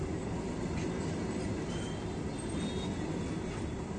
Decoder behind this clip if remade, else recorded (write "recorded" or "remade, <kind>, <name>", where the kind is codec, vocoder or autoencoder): recorded